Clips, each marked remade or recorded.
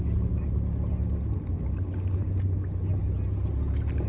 recorded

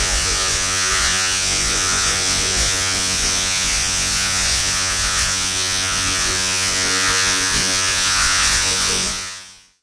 remade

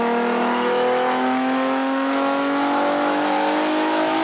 remade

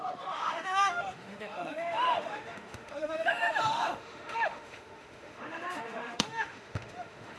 remade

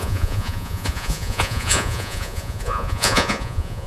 remade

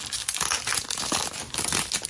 recorded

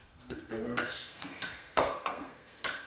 remade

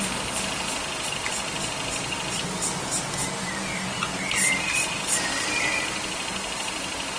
recorded